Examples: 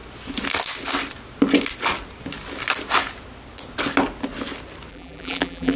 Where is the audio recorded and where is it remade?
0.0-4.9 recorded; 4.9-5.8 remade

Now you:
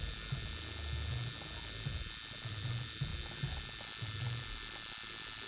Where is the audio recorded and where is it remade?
0.0-5.5 recorded